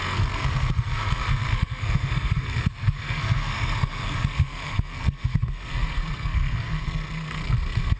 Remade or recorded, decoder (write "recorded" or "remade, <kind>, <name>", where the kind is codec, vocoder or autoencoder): remade, codec, SNAC